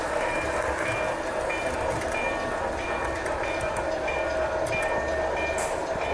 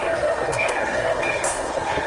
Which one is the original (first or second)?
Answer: first